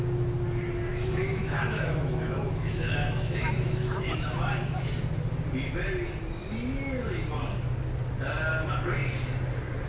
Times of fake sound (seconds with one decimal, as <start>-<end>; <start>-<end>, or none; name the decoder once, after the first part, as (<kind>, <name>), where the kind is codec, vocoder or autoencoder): 0.9-4.9 (autoencoder, DAC-VAE)